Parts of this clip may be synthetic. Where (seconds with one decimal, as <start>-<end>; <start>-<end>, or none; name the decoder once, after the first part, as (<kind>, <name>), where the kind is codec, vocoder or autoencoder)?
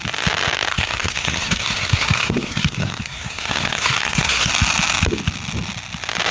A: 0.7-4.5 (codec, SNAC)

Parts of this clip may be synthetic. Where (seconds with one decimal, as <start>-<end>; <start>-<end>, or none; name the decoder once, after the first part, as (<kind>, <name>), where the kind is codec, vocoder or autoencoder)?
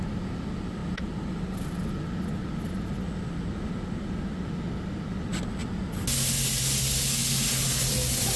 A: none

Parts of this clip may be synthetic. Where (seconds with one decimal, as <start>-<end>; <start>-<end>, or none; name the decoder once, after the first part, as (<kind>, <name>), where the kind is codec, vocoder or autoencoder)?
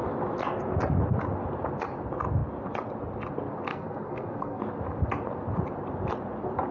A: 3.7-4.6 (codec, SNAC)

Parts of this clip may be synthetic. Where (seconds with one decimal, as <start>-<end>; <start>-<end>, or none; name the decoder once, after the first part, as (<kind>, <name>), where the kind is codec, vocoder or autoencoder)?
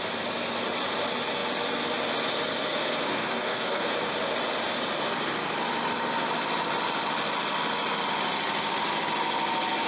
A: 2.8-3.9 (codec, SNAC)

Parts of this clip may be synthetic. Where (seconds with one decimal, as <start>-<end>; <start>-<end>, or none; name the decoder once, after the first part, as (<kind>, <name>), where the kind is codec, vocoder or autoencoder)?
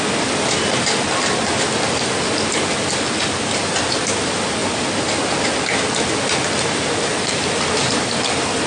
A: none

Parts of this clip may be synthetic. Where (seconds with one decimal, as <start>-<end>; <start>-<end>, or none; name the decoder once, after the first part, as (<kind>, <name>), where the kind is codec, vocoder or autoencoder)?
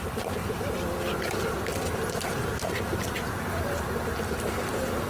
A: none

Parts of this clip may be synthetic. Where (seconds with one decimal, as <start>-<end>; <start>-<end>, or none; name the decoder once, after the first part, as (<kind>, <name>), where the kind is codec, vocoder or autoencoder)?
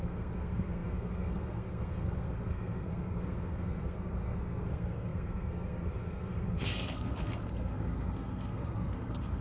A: 0.0-9.4 (codec, SNAC)